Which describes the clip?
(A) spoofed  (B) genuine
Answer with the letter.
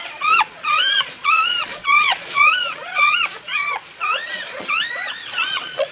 A